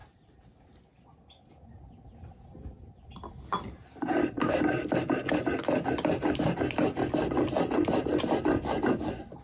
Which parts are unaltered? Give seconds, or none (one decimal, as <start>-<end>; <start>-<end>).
0.0-9.4